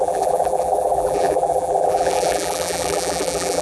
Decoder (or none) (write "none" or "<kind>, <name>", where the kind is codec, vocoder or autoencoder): vocoder, BigVGAN v2